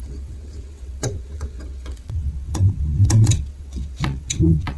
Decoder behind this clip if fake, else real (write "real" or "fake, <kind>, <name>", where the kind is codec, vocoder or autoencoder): fake, vocoder, WaveNeXt